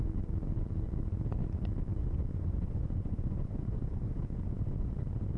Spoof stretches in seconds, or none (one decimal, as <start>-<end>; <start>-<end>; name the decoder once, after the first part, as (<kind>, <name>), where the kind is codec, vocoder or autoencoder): 2.0-4.9 (vocoder, Vocos)